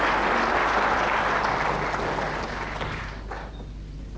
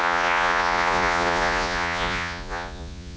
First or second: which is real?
first